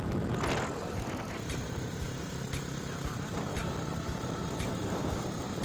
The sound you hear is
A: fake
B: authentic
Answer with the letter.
B